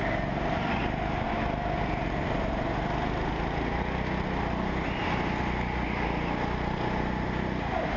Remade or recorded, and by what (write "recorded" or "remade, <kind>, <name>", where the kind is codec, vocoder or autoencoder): recorded